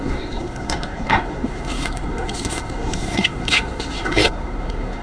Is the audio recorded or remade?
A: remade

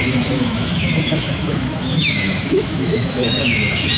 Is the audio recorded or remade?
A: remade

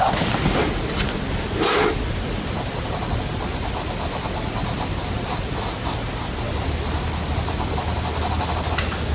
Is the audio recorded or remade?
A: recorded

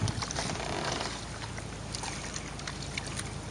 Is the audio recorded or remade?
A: recorded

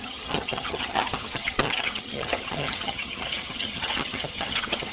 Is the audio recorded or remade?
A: remade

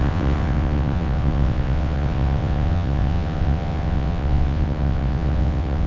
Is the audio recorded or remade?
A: remade